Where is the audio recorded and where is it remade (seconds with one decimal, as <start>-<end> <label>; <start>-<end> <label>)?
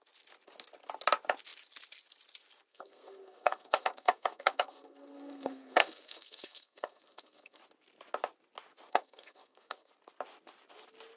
0.0-2.7 recorded; 2.7-7.6 remade; 7.6-8.9 recorded; 8.9-9.9 remade; 9.9-11.2 recorded